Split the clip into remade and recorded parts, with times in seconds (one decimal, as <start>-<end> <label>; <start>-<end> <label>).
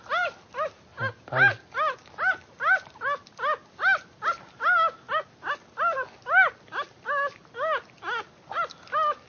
0.0-9.3 recorded